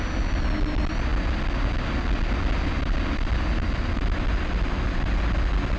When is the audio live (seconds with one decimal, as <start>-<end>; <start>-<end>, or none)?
0.0-5.8